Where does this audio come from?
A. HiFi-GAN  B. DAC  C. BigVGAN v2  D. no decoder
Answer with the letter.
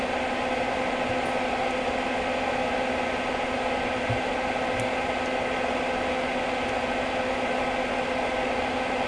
D